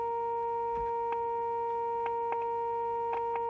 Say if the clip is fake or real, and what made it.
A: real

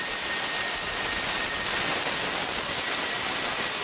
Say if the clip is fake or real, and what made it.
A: real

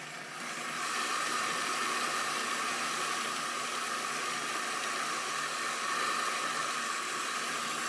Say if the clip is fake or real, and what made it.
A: real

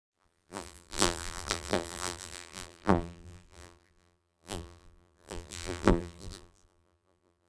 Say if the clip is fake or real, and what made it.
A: fake, vocoder, BigVGAN v2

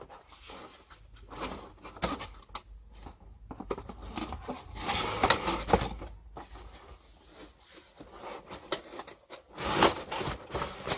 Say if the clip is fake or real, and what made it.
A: real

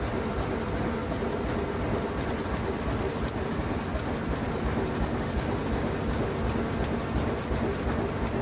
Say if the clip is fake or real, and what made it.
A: real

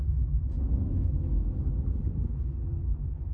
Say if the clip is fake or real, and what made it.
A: real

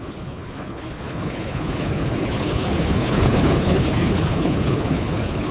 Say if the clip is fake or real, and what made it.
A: fake, codec, HILCodec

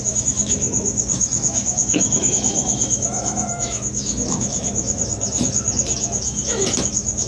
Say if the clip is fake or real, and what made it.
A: fake, autoencoder, DAC-VAE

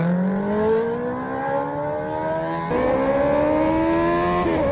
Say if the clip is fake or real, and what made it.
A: real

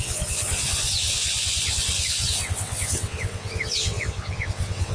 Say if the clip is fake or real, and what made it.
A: fake, vocoder, WaveNeXt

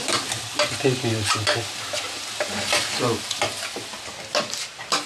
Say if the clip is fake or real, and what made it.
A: real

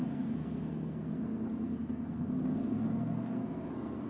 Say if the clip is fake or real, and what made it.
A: fake, codec, SNAC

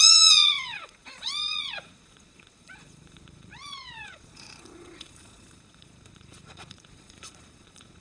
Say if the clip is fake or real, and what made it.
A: fake, vocoder, Vocos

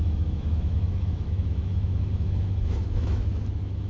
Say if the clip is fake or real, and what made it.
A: fake, autoencoder, DAC-VAE